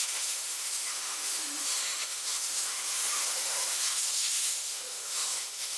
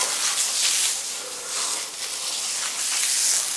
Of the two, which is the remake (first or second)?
first